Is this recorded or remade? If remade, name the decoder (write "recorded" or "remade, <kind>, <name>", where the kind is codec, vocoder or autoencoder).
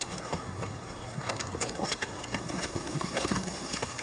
remade, codec, SNAC